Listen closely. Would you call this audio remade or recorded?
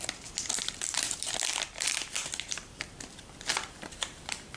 remade